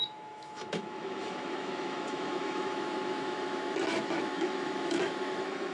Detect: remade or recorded remade